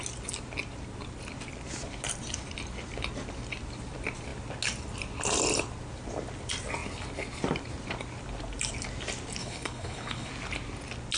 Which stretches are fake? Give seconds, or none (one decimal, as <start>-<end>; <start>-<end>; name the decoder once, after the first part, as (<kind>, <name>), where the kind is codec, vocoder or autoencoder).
9.4-10.3 (codec, HILCodec)